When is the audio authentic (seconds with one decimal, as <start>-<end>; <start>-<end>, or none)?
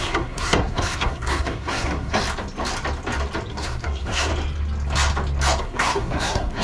2.2-3.5; 4.3-5.6